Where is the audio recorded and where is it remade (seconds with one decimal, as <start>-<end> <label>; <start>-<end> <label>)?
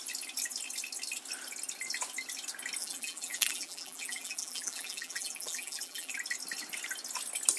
0.0-2.8 recorded; 2.8-6.1 remade; 6.1-7.6 recorded